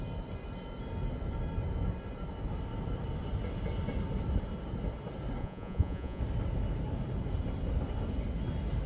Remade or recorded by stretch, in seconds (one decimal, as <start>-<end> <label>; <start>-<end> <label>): 0.0-5.4 recorded; 5.4-6.2 remade; 6.2-8.9 recorded